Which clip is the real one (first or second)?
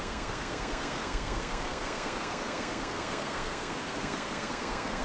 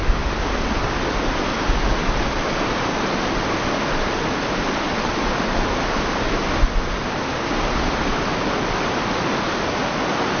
second